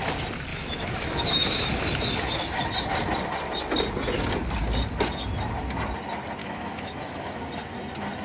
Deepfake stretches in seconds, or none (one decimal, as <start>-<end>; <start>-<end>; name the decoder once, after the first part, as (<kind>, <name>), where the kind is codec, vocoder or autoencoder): 0.5-1.7 (autoencoder, DAC-VAE); 6.4-7.4